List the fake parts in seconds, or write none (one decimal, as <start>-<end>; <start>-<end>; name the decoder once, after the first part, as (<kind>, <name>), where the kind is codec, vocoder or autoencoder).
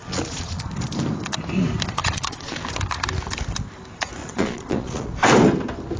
0.0-0.6 (vocoder, Vocos); 2.0-2.6; 4.2-5.1